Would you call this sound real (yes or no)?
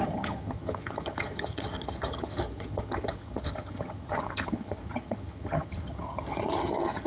no